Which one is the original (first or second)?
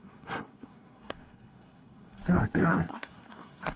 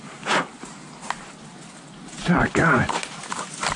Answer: second